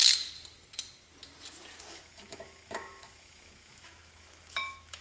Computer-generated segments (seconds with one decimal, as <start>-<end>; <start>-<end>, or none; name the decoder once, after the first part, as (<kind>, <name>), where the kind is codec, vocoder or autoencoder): 1.9-5.0 (autoencoder, DAC-VAE)